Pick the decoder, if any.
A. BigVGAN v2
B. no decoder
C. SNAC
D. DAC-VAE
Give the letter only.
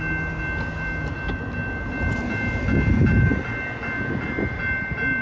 B